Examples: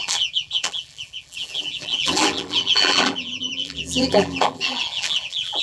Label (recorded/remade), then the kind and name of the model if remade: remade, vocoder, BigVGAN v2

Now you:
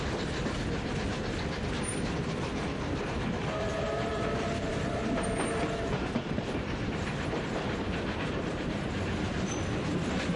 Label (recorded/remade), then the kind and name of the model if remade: remade, vocoder, BigVGAN v2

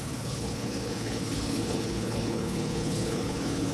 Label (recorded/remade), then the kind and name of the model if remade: remade, codec, HILCodec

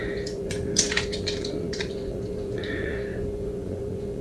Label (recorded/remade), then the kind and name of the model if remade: remade, vocoder, Vocos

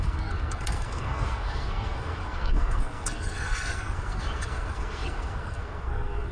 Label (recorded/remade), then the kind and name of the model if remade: remade, codec, SNAC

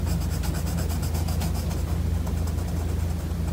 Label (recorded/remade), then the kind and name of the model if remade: recorded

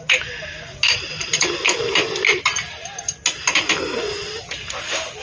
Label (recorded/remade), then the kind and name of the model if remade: recorded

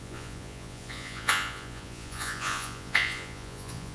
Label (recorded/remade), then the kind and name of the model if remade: remade, vocoder, Vocos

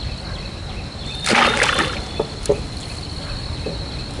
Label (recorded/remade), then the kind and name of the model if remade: recorded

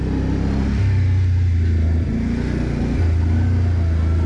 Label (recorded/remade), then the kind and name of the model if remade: recorded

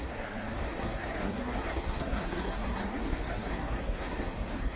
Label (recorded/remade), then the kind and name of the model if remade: remade, codec, SNAC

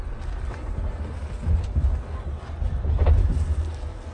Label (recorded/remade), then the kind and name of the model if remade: recorded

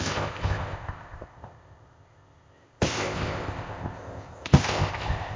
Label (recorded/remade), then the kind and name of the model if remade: remade, codec, ZipCodec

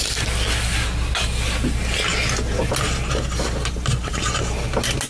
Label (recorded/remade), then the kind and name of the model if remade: recorded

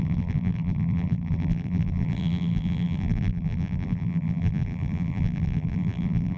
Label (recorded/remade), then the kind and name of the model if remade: remade, vocoder, BigVGAN v2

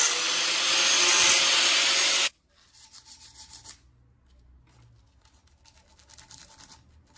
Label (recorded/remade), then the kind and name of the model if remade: recorded